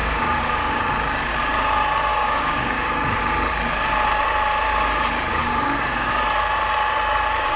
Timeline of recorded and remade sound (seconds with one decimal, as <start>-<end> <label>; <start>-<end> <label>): 0.0-0.8 remade; 0.8-2.1 recorded; 2.1-3.2 remade; 3.2-5.3 recorded; 5.3-6.1 remade; 6.1-7.6 recorded